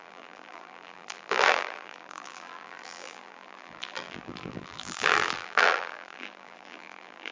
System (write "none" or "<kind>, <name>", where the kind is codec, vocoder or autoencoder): vocoder, BigVGAN v2